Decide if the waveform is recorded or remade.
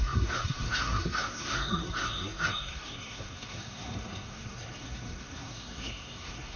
remade